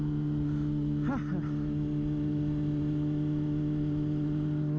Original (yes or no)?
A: yes